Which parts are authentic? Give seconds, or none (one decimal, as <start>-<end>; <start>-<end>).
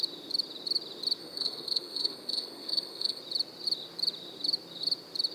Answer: 0.0-1.2; 3.2-5.3